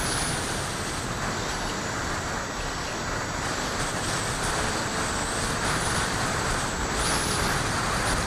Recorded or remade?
recorded